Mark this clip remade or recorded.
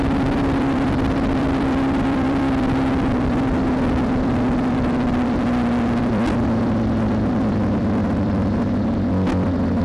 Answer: remade